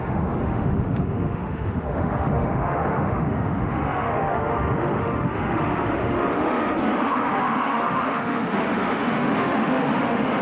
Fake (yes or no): yes